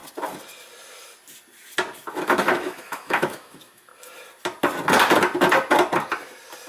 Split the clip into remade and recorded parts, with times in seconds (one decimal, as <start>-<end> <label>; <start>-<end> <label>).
0.0-2.1 recorded; 2.1-3.9 remade; 3.9-6.7 recorded